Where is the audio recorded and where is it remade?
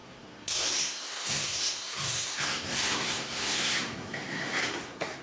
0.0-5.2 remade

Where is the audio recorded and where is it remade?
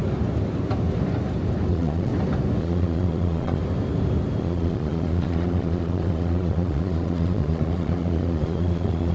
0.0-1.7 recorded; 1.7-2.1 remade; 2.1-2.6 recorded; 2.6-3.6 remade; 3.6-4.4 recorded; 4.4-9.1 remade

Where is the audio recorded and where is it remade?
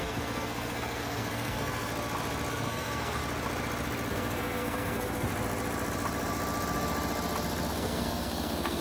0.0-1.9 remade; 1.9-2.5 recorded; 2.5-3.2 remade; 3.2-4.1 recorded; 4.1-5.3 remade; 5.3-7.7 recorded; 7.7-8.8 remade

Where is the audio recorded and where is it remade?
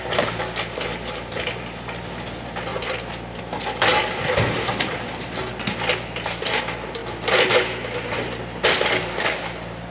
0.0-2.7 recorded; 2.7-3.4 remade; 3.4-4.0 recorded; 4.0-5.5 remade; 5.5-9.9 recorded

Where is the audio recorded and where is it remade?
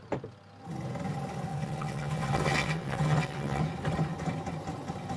0.0-1.5 recorded; 1.5-3.6 remade; 3.6-5.2 recorded